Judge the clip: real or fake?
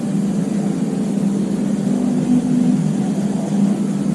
real